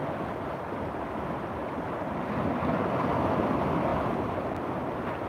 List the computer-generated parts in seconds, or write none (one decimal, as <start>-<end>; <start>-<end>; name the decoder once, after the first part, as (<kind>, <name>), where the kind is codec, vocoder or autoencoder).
none